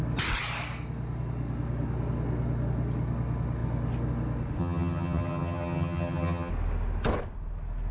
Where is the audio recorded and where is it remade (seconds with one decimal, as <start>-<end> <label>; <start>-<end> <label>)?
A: 0.0-4.6 recorded; 4.6-6.5 remade; 6.5-7.9 recorded